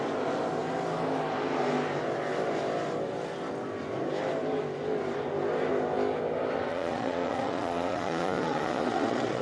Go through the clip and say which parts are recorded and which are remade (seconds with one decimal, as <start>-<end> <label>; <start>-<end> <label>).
0.0-6.7 recorded; 6.7-9.4 remade